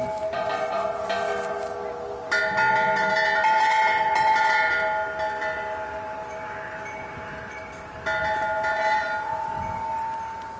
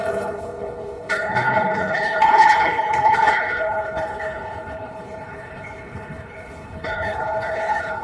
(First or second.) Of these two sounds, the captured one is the first